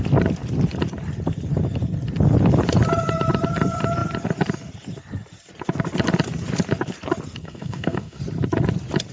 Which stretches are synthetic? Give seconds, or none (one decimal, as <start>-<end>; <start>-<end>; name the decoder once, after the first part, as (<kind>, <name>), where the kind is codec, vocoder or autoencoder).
7.4-8.2 (codec, SNAC)